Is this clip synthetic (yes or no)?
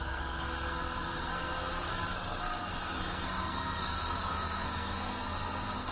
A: yes